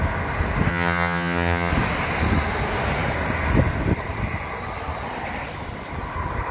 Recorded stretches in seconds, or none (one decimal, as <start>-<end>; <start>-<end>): 0.0-0.7; 1.7-6.5